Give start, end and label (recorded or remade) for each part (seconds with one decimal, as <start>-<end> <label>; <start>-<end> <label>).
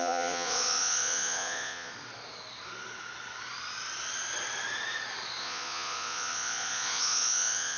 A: 0.0-1.9 remade; 1.9-5.4 recorded; 5.4-7.8 remade